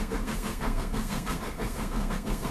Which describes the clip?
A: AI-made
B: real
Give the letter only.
A